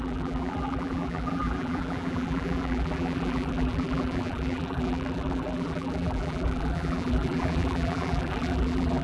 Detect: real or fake fake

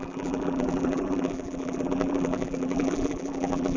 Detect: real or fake fake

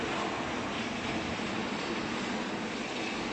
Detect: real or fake real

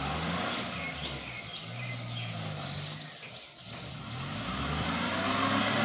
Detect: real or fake real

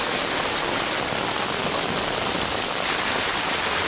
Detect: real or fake real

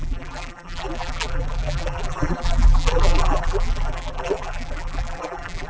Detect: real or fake fake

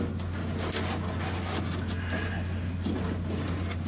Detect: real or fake real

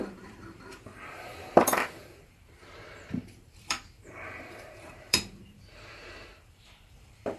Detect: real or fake fake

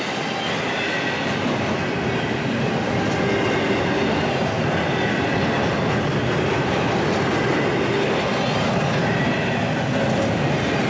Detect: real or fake real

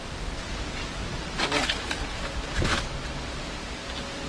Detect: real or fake real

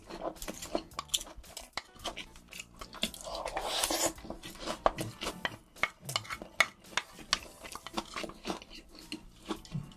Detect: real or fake real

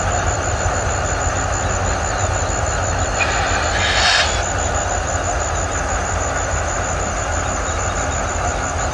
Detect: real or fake real